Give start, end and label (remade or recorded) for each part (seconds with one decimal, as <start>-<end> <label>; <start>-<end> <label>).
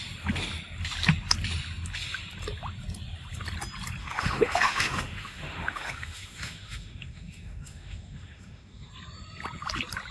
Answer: 0.0-4.0 recorded; 4.0-8.9 remade; 8.9-10.1 recorded